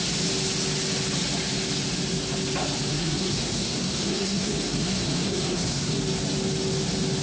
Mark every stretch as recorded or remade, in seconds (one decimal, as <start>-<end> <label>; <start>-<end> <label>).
0.0-2.9 recorded; 2.9-6.0 remade; 6.0-7.2 recorded